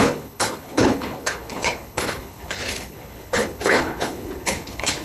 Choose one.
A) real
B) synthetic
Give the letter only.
B